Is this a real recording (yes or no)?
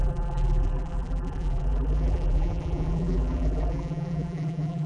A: no